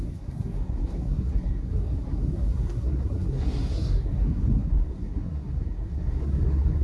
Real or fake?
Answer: fake